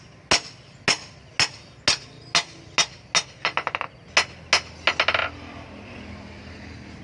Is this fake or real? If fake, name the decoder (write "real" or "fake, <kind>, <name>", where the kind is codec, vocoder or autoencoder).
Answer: real